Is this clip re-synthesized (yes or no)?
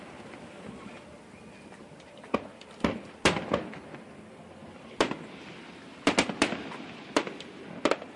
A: no